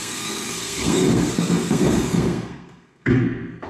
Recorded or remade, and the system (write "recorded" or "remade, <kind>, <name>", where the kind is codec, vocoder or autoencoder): remade, codec, SNAC